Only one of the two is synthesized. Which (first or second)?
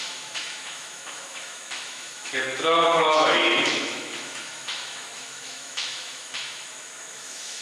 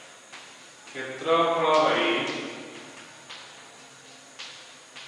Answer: first